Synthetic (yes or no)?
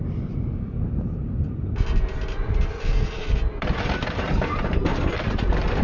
no